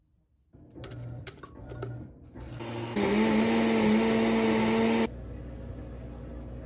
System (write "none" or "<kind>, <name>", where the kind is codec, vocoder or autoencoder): none